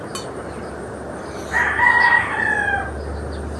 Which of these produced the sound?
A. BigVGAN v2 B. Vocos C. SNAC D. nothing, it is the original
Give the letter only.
D